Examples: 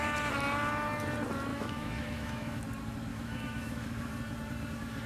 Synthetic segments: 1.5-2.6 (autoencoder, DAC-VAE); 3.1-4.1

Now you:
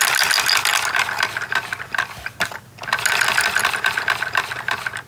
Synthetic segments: none

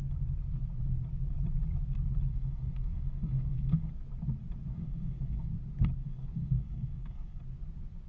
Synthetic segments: 2.3-3.9 (codec, SNAC); 4.7-5.5; 6.0-7.4

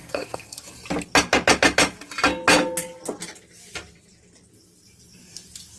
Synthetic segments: 0.0-0.6 (codec, SNAC)